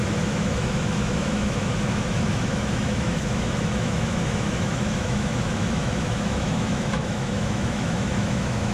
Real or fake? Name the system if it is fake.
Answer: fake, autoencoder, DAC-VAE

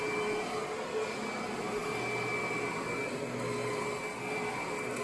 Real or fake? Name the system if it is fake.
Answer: real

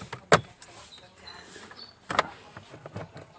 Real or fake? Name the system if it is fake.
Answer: real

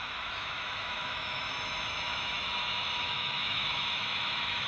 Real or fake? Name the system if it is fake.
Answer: fake, autoencoder, DAC-VAE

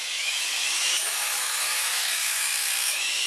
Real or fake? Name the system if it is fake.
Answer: fake, autoencoder, DAC-VAE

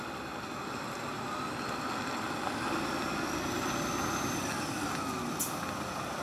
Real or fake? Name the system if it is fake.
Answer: real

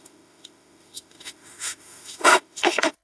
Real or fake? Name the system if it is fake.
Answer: fake, autoencoder, DAC-VAE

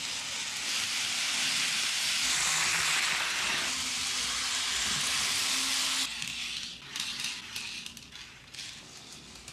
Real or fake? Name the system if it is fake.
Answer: real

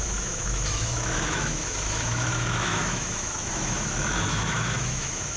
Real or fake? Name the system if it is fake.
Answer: fake, autoencoder, DAC-VAE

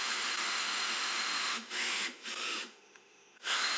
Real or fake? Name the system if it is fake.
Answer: fake, autoencoder, DAC-VAE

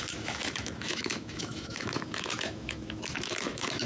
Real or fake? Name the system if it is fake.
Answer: fake, autoencoder, DAC-VAE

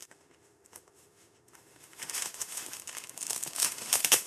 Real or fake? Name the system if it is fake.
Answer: fake, autoencoder, DAC-VAE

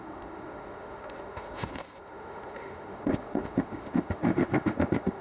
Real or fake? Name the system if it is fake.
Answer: fake, autoencoder, DAC-VAE